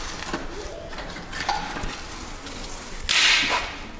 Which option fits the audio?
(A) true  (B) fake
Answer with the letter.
A